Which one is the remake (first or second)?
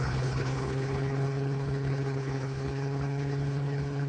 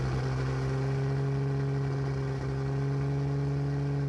first